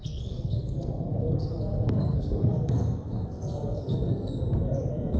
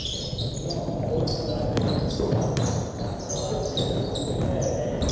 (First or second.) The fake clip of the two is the first